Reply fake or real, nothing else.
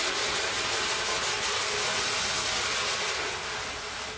real